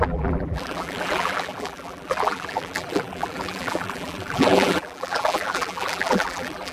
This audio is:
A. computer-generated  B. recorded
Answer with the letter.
A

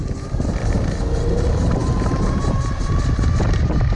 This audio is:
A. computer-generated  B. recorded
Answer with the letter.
B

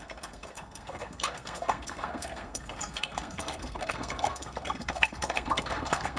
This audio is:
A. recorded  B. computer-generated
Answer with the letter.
B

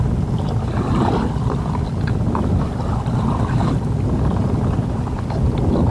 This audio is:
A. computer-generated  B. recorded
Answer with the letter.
B